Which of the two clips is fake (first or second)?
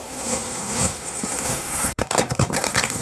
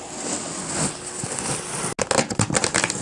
first